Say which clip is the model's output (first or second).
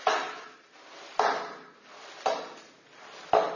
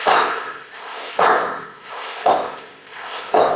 second